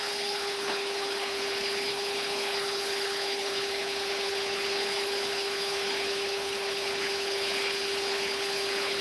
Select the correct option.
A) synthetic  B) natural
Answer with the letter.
A